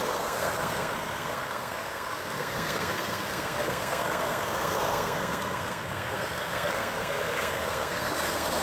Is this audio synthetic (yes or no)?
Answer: yes